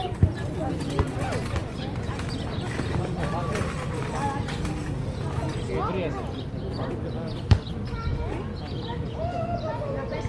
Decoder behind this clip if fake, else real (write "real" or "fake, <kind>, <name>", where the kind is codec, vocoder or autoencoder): real